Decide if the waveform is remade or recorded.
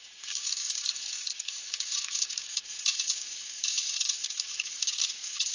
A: remade